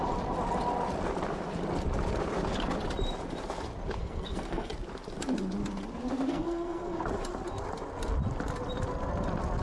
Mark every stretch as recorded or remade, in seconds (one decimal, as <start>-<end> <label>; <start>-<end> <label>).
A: 0.0-4.0 recorded; 4.0-4.7 remade; 4.7-6.3 recorded; 6.3-7.0 remade; 7.0-9.6 recorded